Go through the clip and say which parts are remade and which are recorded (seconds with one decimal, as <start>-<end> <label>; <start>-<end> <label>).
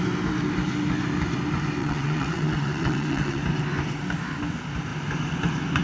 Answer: 0.0-1.8 recorded; 1.8-3.4 remade; 3.4-5.8 recorded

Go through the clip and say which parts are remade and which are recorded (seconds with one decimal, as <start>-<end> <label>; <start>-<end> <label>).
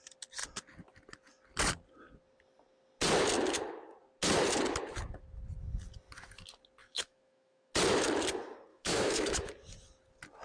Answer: 0.0-6.8 recorded; 6.8-7.7 remade; 7.7-8.7 recorded; 8.7-9.5 remade; 9.5-10.4 recorded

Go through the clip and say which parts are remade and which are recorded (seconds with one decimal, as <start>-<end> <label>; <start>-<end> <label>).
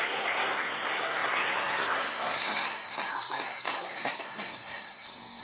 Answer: 0.0-5.4 remade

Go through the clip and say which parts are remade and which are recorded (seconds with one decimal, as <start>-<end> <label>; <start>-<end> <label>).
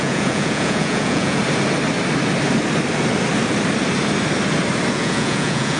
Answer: 0.0-1.4 remade; 1.4-4.9 recorded; 4.9-5.8 remade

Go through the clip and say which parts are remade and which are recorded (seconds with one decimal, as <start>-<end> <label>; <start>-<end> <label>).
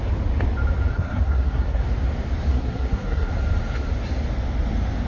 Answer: 0.0-0.9 recorded; 0.9-1.8 remade; 1.8-2.5 recorded; 2.5-3.3 remade; 3.3-5.1 recorded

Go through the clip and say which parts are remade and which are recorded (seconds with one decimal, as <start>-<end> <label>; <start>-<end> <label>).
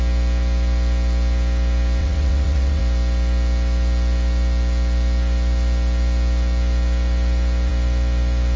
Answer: 0.0-2.0 recorded; 2.0-2.8 remade; 2.8-8.6 recorded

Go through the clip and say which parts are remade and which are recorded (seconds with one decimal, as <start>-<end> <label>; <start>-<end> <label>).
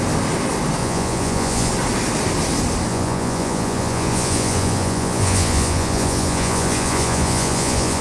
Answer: 0.0-0.8 recorded; 0.8-1.7 remade; 1.7-2.9 recorded; 2.9-8.0 remade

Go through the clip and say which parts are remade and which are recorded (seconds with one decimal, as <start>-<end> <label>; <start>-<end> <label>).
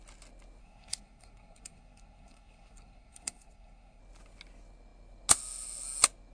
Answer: 0.0-0.6 recorded; 0.6-4.0 remade; 4.0-6.3 recorded